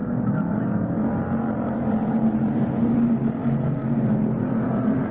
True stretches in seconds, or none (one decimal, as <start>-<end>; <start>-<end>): 0.0-0.5